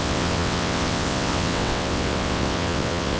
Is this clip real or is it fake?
fake